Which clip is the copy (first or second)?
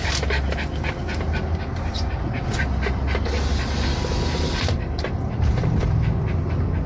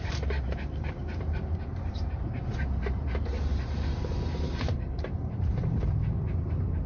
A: second